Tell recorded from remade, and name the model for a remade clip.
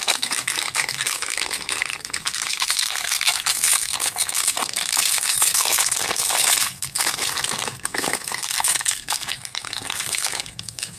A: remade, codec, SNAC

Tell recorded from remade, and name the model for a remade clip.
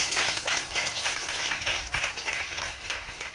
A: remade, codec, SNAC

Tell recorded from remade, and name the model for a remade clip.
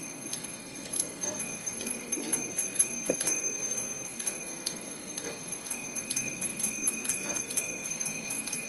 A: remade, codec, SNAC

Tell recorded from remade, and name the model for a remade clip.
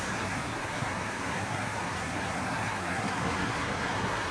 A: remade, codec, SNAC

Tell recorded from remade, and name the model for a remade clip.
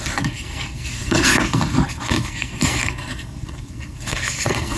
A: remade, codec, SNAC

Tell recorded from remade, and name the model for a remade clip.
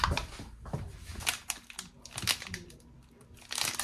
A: recorded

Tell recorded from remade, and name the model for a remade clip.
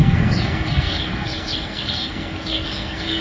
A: remade, codec, SNAC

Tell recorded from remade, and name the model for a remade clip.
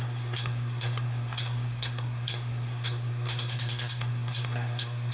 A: remade, codec, SNAC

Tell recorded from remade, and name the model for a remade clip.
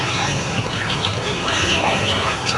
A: remade, codec, SNAC